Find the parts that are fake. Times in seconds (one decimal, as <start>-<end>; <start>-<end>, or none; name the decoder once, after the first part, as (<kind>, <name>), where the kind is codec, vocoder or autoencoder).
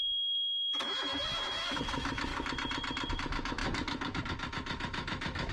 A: 0.0-2.3 (autoencoder, DAC-VAE); 3.1-5.5